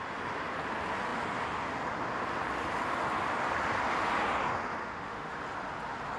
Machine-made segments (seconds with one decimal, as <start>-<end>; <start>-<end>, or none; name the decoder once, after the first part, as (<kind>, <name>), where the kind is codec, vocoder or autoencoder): 4.8-5.4 (autoencoder, DAC-VAE)